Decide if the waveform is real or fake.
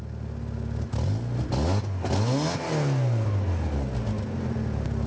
real